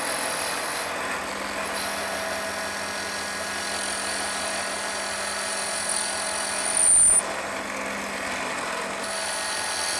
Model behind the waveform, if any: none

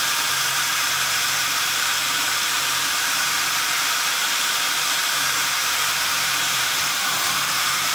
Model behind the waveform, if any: vocoder, BigVGAN v2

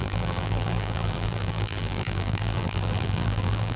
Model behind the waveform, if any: vocoder, BigVGAN v2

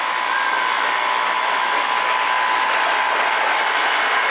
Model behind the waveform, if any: none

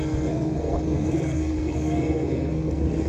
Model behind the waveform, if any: codec, SNAC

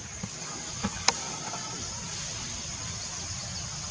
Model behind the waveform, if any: none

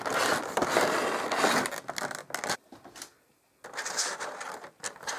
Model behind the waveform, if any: none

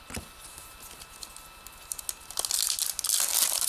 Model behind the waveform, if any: none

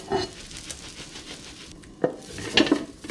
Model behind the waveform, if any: none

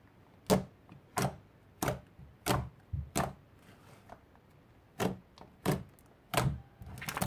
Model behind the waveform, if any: none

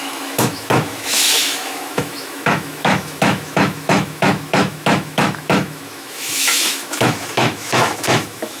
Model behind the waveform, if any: autoencoder, DAC-VAE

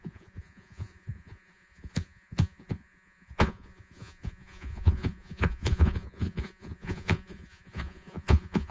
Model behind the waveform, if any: vocoder, Vocos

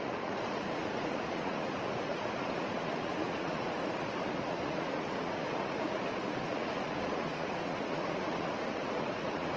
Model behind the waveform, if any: vocoder, Vocos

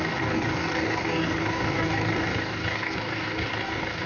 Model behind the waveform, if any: codec, DAC